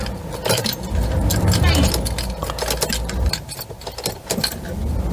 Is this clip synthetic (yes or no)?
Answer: no